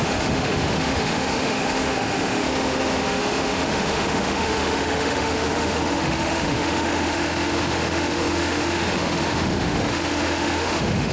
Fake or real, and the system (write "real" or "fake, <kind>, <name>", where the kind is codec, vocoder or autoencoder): fake, autoencoder, DAC-VAE